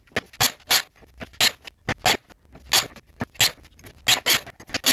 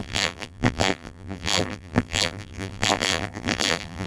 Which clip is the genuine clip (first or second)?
first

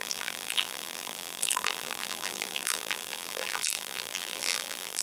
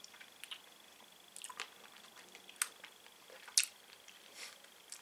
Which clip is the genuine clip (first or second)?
second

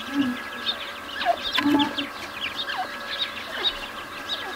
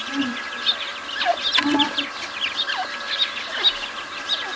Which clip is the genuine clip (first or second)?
first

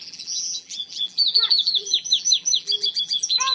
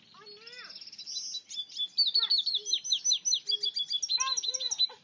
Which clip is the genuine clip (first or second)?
second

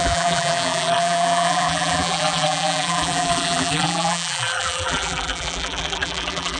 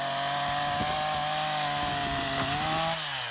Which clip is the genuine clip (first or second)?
second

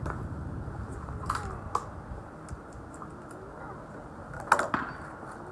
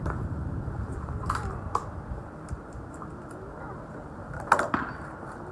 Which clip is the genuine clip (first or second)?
first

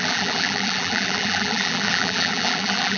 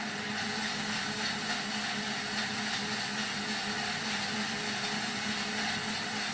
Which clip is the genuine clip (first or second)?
second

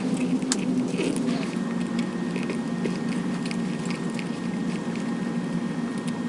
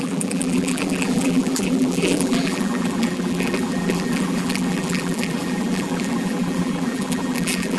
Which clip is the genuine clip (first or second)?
first